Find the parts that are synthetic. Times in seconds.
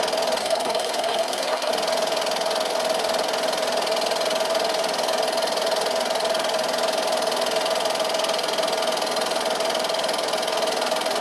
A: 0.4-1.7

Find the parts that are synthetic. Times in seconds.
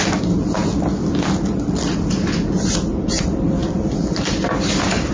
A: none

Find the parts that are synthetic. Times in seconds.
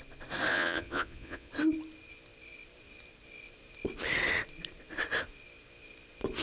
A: 0.5-1.5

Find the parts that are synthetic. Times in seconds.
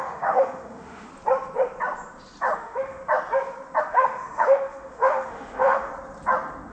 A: 0.0-1.1; 2.4-3.0; 3.8-5.9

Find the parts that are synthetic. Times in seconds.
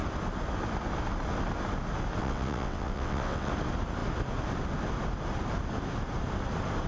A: 2.2-3.5